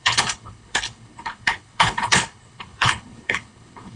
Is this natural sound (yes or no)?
no